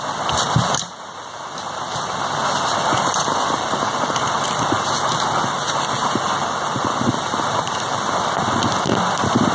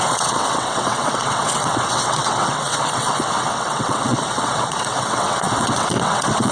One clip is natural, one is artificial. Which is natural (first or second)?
first